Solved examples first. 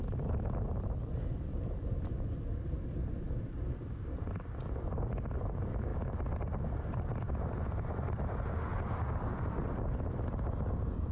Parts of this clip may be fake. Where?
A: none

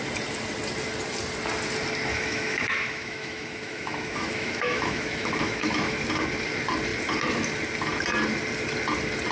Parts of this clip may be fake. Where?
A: 2.1-6.0 (autoencoder, DAC-VAE)

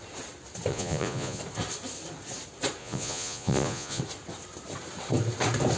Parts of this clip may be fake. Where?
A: 0.7-1.4 (vocoder, Vocos); 2.8-4.0

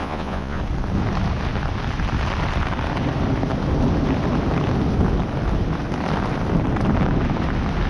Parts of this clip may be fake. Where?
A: 0.0-0.6 (vocoder, Vocos)

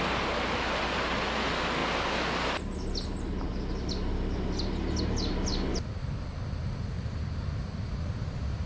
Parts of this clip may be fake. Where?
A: none

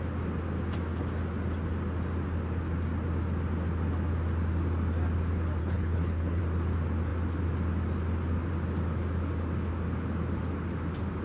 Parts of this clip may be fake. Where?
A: 5.6-6.4 (codec, HILCodec)

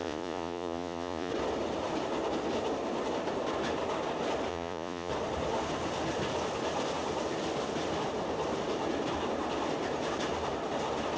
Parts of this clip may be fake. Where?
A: 0.0-1.3 (vocoder, Vocos); 4.5-5.1